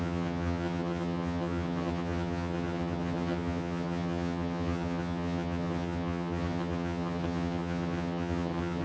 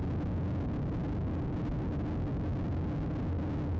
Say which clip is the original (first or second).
second